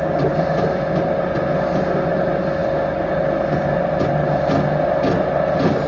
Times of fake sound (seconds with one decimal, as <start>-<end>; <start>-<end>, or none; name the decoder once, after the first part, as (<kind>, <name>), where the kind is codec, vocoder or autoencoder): none